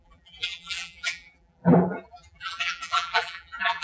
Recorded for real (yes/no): no